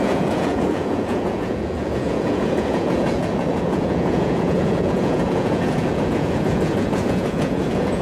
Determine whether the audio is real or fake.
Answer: fake